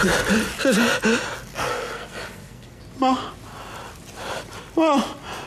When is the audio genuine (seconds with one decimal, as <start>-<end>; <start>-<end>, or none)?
0.0-1.5; 2.8-5.5